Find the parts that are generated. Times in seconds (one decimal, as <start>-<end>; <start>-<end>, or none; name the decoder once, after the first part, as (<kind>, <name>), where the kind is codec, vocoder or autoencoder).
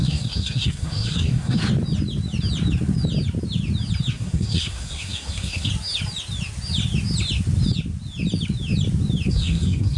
0.0-1.6 (codec, SNAC); 4.1-5.7; 9.3-10.0